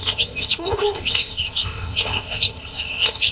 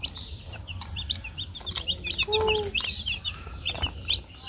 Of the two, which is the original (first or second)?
second